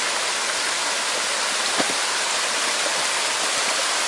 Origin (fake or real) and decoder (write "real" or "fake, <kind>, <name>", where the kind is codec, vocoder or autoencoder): real